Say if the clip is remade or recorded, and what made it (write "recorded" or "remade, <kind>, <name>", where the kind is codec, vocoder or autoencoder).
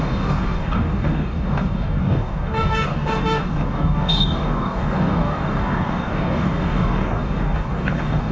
remade, codec, DAC